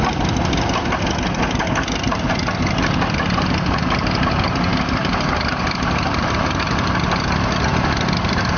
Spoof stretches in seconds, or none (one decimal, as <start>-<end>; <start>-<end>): none